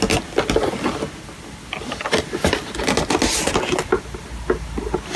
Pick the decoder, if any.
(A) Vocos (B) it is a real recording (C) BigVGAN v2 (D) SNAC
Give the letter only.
B